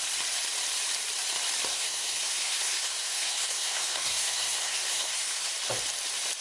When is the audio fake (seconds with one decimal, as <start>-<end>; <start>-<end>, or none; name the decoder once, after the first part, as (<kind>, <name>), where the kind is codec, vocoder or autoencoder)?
1.7-5.5 (codec, SNAC)